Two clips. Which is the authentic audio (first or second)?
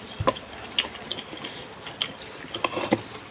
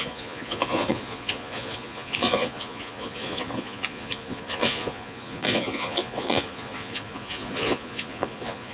first